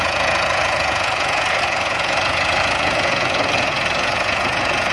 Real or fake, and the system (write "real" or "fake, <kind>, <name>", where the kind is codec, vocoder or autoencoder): fake, vocoder, Vocos